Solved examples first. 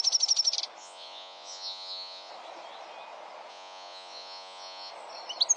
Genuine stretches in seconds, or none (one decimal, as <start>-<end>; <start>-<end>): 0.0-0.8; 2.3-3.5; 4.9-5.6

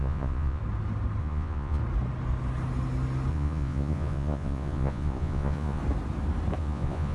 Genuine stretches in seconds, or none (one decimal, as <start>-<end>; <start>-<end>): 0.6-1.2; 1.8-3.3; 5.8-6.6

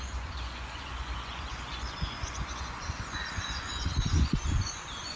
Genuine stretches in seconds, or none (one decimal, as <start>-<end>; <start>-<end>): none

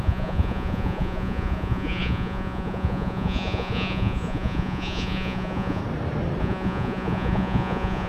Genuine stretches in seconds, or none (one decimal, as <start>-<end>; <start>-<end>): 5.8-6.4